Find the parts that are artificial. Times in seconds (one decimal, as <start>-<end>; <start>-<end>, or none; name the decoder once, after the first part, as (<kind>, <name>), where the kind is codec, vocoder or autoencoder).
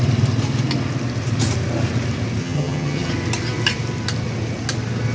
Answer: 2.4-3.1 (vocoder, HiFi-GAN)